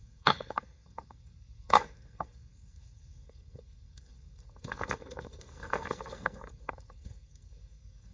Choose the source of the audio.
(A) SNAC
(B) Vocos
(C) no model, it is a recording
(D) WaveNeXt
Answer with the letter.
A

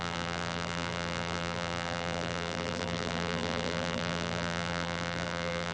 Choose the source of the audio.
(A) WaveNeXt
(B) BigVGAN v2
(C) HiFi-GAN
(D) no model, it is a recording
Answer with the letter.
B